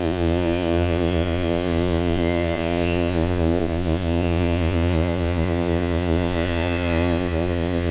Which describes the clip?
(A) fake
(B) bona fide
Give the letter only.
A